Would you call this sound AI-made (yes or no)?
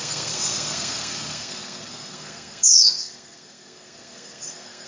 yes